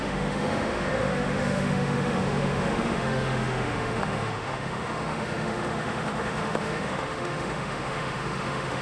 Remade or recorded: remade